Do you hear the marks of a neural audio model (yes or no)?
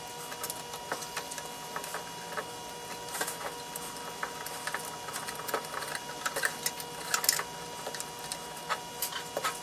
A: no